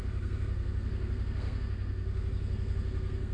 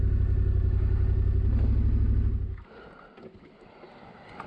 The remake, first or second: first